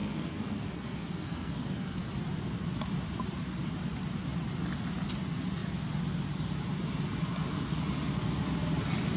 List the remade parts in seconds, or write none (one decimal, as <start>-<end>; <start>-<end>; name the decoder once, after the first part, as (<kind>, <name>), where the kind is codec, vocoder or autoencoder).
0.0-2.0 (codec, SNAC)